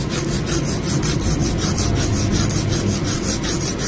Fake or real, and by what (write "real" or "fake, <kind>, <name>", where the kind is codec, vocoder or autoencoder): real